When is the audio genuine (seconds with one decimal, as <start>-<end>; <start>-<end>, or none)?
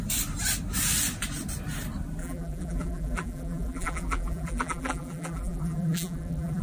0.0-2.2